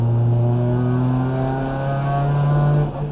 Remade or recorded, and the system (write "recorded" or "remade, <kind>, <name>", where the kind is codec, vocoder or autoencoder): recorded